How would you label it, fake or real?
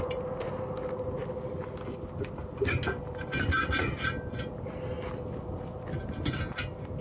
real